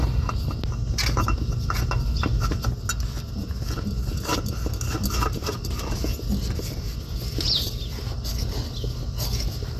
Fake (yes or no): no